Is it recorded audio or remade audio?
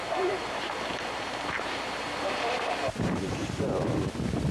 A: remade